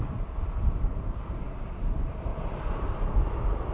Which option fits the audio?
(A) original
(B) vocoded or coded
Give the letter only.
B